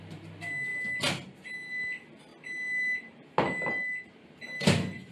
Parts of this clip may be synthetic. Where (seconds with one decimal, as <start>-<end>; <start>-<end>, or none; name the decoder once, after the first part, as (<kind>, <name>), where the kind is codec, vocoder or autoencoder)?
none